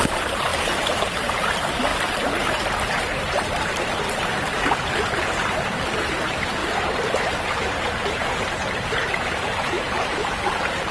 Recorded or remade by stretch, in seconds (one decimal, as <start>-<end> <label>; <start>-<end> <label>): 0.0-1.9 remade; 1.9-2.4 recorded; 2.4-6.6 remade; 6.6-7.4 recorded; 7.4-10.9 remade